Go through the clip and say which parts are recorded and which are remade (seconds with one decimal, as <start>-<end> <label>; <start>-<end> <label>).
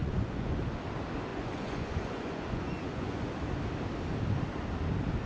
0.0-0.6 remade; 0.6-1.3 recorded; 1.3-3.3 remade; 3.3-5.3 recorded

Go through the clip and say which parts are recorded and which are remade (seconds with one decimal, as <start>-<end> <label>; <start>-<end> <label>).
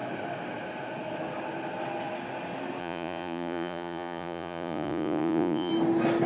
0.0-2.8 recorded; 2.8-5.7 remade; 5.7-6.3 recorded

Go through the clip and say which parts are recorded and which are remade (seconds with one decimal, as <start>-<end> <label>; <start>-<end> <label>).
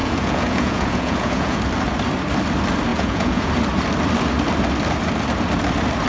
0.0-1.6 remade; 1.6-2.9 recorded; 2.9-3.5 remade; 3.5-6.1 recorded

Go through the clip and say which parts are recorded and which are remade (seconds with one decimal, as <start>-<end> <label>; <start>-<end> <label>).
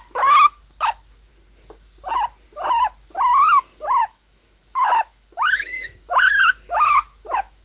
0.0-1.3 remade; 1.3-4.0 recorded; 4.0-7.6 remade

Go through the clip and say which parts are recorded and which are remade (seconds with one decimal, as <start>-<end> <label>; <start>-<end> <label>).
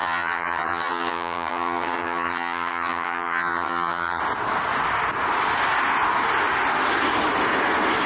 0.0-4.2 remade; 4.2-8.1 recorded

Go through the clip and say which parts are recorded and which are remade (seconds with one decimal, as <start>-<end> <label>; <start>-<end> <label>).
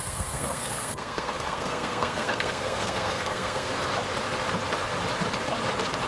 0.0-3.7 remade; 3.7-6.1 recorded